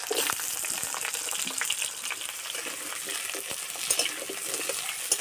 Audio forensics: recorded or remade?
recorded